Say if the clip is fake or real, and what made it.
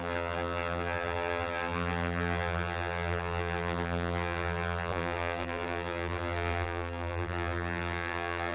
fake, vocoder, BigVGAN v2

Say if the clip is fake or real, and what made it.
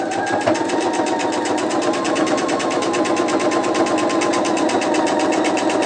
real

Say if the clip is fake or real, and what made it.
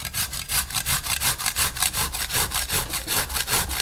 real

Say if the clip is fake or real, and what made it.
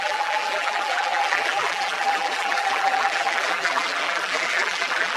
fake, vocoder, BigVGAN v2